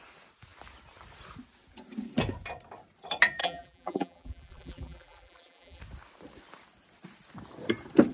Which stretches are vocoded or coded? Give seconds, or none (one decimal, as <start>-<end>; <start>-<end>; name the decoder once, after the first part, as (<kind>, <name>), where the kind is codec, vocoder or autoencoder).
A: 3.4-5.8 (vocoder, BigVGAN v2)